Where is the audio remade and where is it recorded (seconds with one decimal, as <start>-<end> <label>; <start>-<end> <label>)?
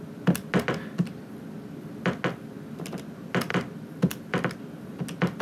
0.0-5.4 recorded